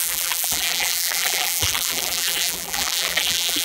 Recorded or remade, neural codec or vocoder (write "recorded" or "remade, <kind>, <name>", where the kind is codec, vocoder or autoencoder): remade, vocoder, BigVGAN v2